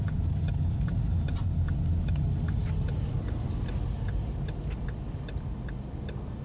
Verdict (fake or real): real